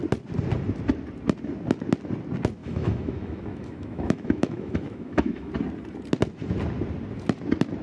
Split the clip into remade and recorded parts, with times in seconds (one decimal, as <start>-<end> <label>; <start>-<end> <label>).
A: 0.0-2.6 recorded; 2.6-5.5 remade; 5.5-7.8 recorded